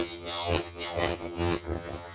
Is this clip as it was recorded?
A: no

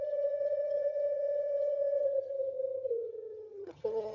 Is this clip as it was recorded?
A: no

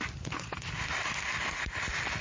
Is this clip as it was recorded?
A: yes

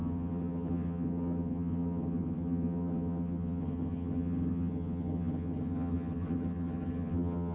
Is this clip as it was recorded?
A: no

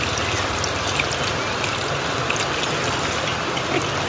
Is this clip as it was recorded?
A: yes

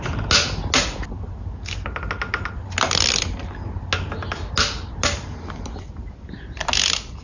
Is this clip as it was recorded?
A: yes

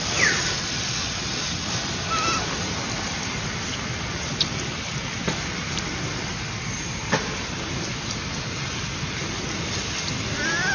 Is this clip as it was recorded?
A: yes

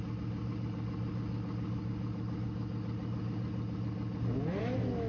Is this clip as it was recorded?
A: yes